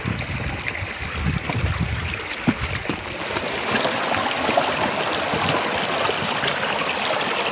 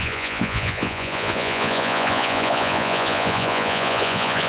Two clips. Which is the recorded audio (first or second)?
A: first